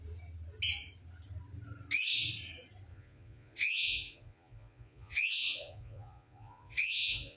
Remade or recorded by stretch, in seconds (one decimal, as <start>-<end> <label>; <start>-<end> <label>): 0.0-2.9 recorded; 2.9-7.4 remade